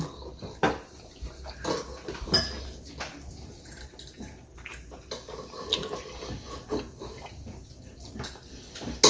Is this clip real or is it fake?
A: real